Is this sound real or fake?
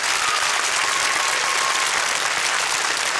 real